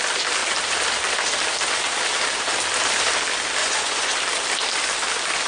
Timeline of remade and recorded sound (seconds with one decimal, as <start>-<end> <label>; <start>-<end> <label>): 0.0-3.6 recorded; 3.6-4.1 remade; 4.1-5.5 recorded